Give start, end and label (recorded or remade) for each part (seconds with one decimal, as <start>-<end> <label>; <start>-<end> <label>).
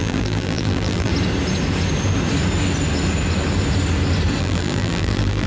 0.0-1.1 remade; 1.1-4.4 recorded; 4.4-5.5 remade